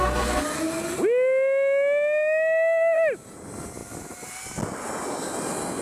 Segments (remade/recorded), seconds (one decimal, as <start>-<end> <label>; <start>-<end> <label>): 0.0-5.8 recorded